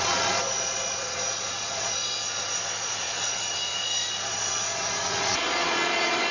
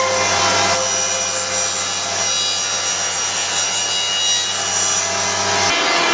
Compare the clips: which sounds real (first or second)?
second